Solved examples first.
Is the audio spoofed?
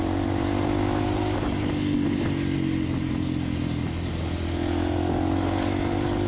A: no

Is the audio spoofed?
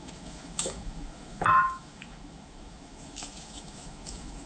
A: yes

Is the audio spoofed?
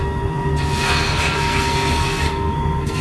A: yes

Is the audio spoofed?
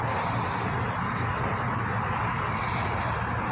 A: no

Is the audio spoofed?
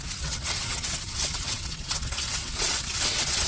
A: yes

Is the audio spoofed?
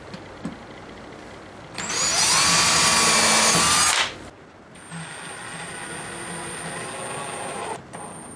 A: no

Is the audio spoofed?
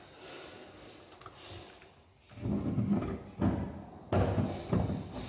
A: no